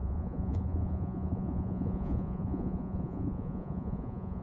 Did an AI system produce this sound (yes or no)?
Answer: yes